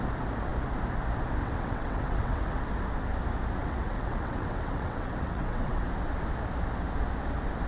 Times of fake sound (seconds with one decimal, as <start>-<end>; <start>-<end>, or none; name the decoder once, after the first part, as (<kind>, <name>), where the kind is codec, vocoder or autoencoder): 1.4-2.6 (vocoder, WaveNeXt); 3.6-5.8